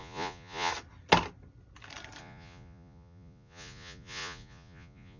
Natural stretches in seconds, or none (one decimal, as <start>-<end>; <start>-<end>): 0.7-2.2